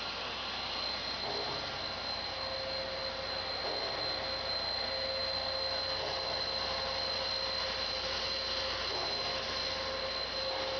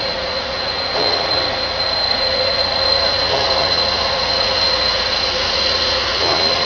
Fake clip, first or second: second